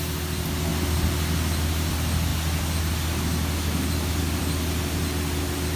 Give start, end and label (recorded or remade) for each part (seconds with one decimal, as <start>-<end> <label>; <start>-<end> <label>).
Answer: 0.0-5.8 recorded